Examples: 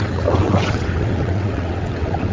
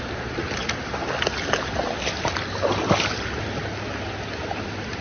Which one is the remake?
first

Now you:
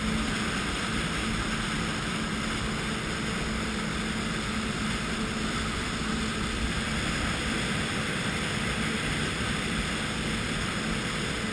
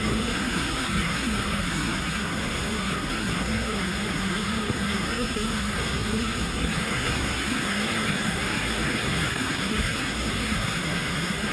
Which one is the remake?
second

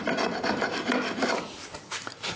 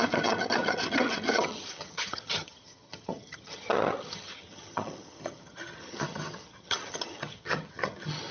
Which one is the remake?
second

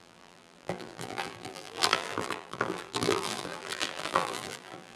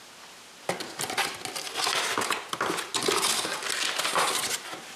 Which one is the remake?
first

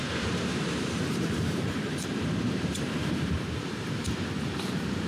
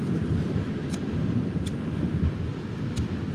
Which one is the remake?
first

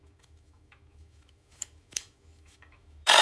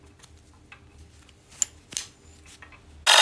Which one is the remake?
first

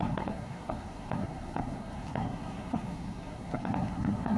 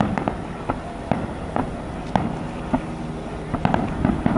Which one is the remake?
first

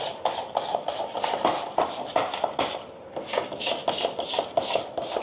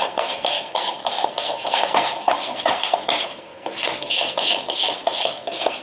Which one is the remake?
second